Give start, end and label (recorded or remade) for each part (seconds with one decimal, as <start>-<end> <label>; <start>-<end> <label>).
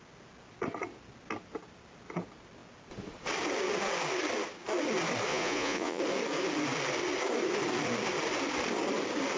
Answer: 0.0-5.3 recorded; 5.3-6.0 remade; 6.0-9.4 recorded